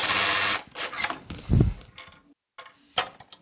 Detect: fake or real real